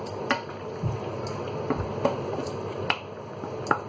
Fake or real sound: real